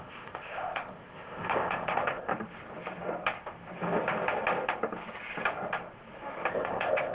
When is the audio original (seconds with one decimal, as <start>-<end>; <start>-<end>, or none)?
2.3-6.5